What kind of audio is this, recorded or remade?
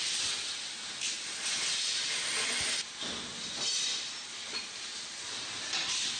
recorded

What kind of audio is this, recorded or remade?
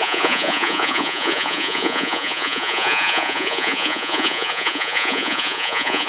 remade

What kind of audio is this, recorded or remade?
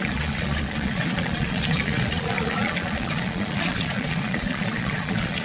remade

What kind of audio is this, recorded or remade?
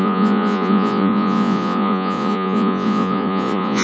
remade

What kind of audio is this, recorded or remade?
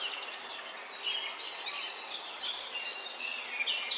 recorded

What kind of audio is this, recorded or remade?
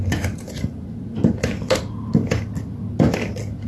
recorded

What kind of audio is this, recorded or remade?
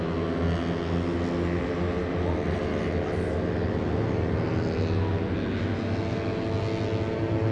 recorded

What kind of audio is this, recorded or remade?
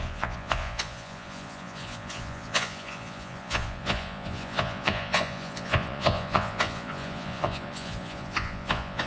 remade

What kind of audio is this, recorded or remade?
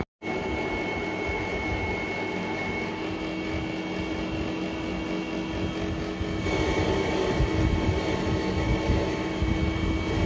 recorded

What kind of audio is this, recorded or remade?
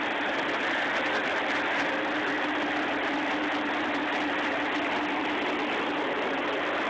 recorded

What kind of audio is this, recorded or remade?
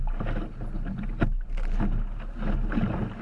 recorded